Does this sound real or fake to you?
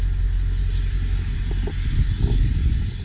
real